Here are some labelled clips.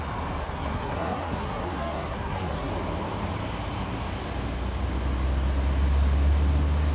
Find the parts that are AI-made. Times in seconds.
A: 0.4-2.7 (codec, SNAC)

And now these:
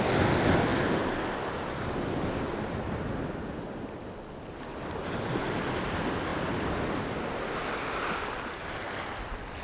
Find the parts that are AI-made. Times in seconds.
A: none

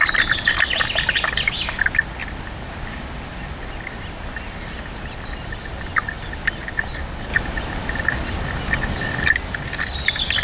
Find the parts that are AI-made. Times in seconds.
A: none

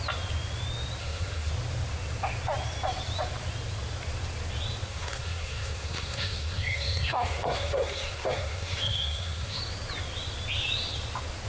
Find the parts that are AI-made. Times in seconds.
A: 1.0-1.5 (codec, SNAC); 4.9-9.6